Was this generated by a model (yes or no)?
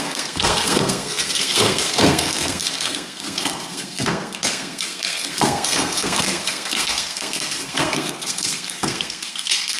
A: yes